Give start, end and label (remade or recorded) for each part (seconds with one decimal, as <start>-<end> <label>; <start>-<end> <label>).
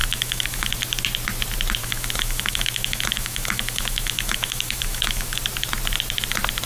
0.0-0.7 remade; 0.7-1.8 recorded; 1.8-5.4 remade; 5.4-6.7 recorded